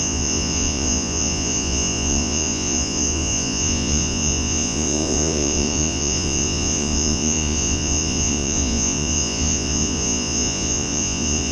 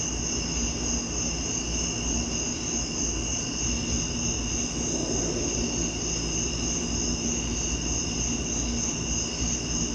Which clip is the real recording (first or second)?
second